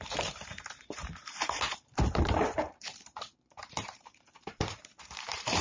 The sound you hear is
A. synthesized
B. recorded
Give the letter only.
A